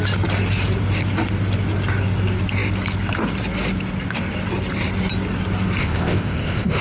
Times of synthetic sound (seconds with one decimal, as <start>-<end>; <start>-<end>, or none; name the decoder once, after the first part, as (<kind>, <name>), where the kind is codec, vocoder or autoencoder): 5.8-6.8 (codec, ZipCodec)